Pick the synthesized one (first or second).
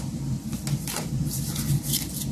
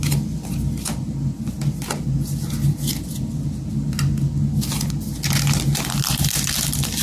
first